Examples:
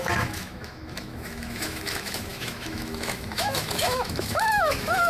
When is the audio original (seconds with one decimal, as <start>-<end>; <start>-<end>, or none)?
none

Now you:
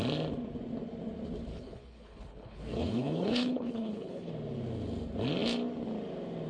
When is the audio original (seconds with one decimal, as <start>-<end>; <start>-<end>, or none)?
0.0-1.5; 4.3-6.5

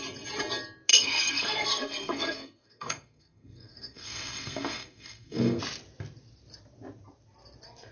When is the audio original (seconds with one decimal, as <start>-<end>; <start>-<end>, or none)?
0.0-0.9; 5.6-7.9